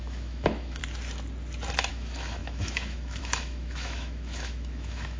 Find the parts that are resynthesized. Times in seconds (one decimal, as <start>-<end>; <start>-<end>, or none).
0.0-0.8; 1.9-5.2